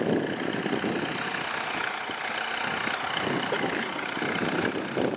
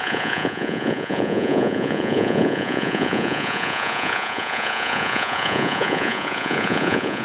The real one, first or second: first